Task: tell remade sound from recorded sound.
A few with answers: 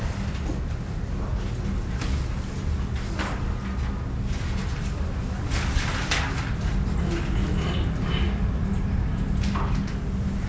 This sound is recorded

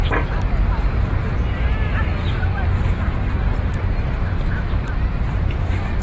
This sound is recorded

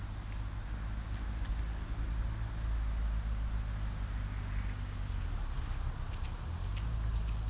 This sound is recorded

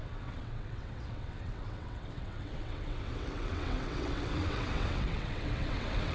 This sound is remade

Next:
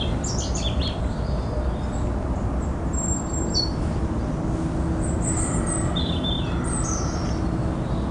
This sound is recorded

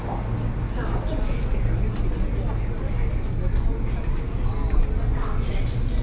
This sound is recorded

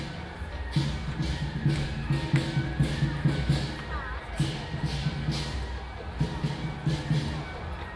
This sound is recorded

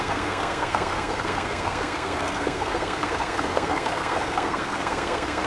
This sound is remade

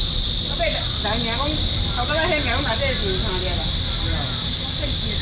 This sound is recorded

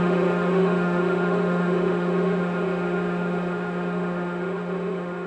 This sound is remade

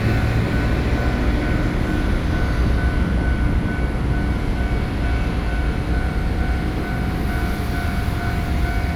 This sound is recorded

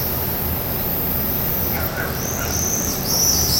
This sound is remade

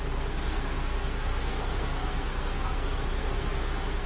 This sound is remade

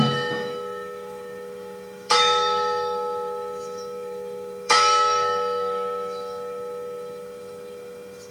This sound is remade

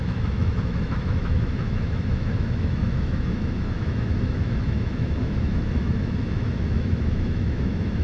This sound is remade